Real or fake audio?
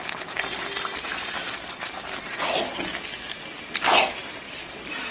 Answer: real